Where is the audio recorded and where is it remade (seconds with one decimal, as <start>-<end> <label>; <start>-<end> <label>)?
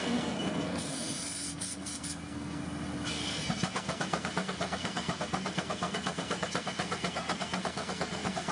0.0-2.6 remade; 2.6-3.1 recorded; 3.1-8.5 remade